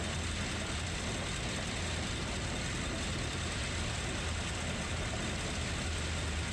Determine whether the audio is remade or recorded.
recorded